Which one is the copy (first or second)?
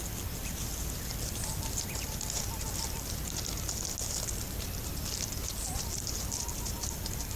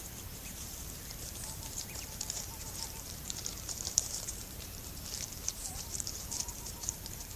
second